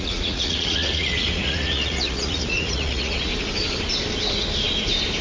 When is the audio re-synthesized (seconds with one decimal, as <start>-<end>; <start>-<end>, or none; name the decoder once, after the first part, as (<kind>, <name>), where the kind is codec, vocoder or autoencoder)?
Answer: 0.0-3.3 (vocoder, Vocos)